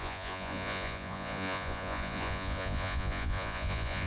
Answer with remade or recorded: remade